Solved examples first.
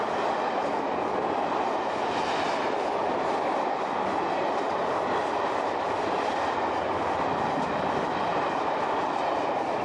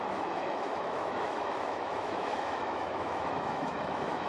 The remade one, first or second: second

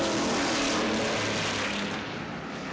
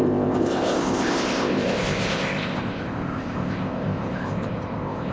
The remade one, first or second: second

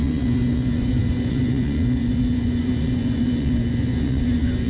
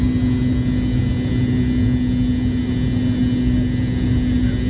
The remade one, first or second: first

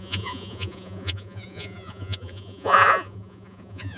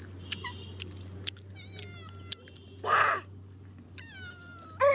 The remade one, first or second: first